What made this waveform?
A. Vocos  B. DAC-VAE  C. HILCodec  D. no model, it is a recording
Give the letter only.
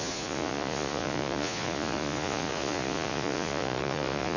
A